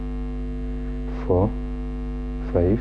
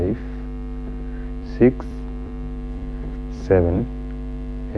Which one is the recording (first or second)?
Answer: first